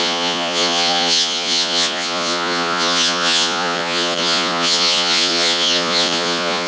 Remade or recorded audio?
remade